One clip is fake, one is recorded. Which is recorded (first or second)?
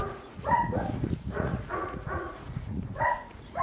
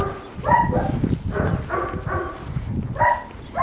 second